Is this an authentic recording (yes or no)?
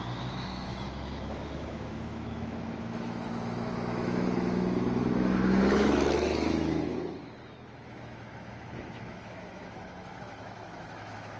no